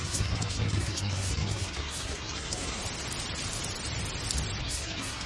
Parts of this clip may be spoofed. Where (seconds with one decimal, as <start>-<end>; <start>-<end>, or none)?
0.0-2.8; 4.6-5.3